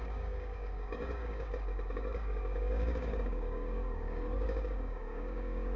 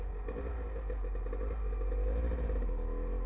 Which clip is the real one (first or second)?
second